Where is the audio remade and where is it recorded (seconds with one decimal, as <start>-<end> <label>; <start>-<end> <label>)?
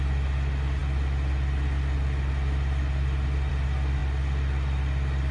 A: 0.0-5.3 recorded